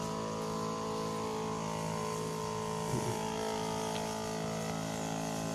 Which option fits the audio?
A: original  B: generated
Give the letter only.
A